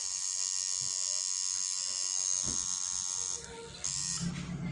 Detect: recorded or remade recorded